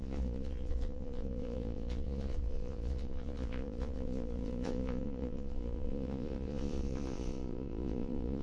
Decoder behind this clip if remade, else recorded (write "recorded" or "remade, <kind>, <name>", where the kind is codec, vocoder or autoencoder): remade, vocoder, Vocos